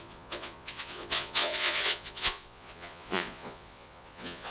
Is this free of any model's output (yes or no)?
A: no